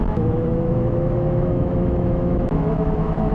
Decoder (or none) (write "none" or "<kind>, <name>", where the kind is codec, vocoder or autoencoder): autoencoder, DAC-VAE